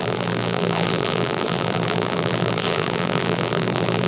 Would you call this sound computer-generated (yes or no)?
yes